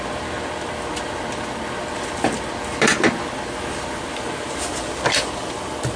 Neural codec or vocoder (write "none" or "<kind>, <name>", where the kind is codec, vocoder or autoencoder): none